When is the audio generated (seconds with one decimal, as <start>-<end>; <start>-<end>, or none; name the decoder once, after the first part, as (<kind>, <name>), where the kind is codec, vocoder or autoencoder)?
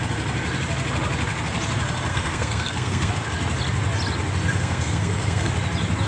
2.1-3.1 (codec, SNAC); 4.5-5.5